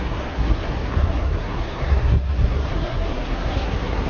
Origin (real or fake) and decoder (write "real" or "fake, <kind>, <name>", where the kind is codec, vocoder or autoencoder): fake, codec, SNAC